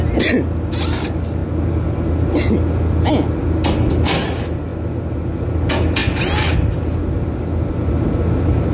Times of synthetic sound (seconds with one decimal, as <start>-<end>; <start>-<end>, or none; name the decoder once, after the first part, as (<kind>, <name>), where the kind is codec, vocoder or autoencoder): none